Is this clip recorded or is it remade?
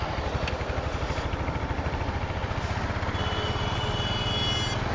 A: recorded